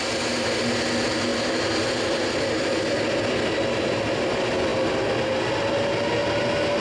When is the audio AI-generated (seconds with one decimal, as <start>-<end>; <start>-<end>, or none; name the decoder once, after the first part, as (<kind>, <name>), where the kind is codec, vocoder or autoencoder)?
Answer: none